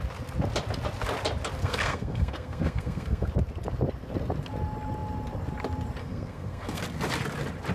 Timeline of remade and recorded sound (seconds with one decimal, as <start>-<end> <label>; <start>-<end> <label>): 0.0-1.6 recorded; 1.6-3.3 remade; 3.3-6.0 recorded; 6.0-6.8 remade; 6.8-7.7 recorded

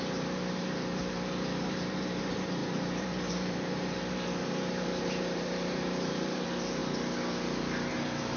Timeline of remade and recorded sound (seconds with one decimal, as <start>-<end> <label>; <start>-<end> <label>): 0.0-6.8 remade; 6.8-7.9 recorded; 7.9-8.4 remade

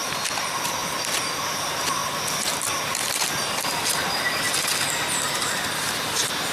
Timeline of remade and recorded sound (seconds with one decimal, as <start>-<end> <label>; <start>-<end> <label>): 0.0-0.8 remade; 0.8-1.5 recorded; 1.5-2.0 remade; 2.0-5.8 recorded; 5.8-6.5 remade